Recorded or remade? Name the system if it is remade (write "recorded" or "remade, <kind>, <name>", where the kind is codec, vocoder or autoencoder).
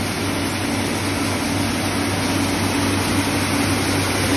recorded